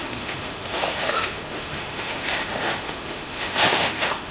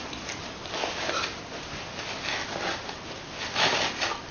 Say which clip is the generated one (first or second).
first